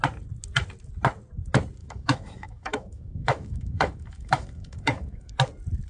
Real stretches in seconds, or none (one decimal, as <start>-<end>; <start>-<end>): 0.0-1.8; 5.3-5.9